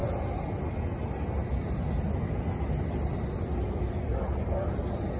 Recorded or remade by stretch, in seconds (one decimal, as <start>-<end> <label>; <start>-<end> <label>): 0.0-5.2 recorded